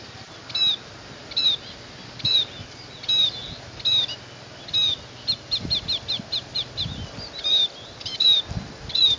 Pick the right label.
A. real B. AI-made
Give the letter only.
A